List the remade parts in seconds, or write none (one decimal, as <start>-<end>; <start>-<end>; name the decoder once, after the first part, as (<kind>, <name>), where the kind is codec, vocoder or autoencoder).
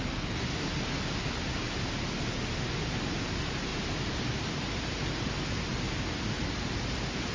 3.7-4.4 (vocoder, BigVGAN v2); 5.7-6.8